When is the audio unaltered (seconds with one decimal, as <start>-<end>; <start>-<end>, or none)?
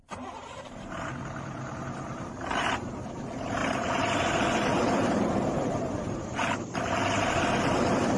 none